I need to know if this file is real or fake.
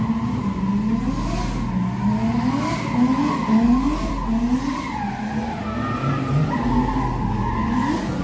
real